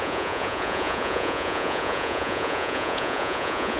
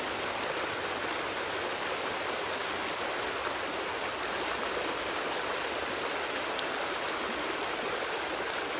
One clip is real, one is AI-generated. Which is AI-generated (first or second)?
first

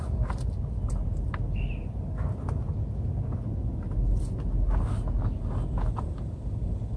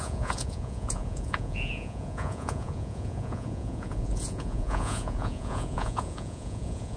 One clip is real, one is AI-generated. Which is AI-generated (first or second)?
second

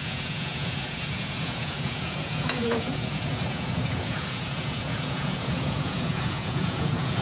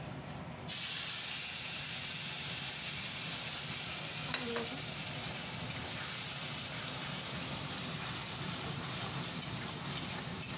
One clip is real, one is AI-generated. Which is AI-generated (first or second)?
first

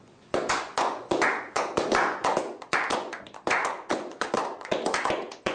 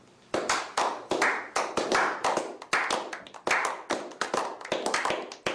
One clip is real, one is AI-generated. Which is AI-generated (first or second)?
first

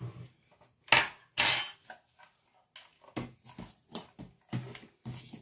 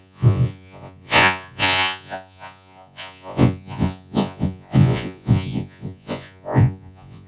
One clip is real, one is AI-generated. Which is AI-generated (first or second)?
second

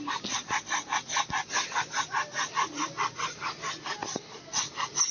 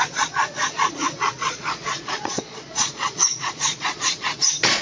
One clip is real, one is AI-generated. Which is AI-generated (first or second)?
second